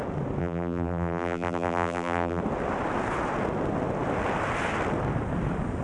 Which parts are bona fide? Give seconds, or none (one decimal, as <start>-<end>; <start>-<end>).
0.0-0.4; 2.4-5.8